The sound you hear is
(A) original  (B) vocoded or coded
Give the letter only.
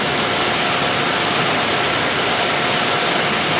A